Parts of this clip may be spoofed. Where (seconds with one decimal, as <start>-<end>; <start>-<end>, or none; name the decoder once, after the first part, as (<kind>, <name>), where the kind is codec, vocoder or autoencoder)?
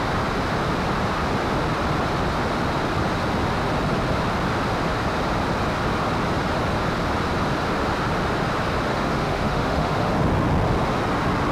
8.9-10.1 (autoencoder, DAC-VAE)